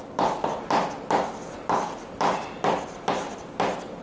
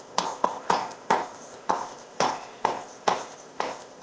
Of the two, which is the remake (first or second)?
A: second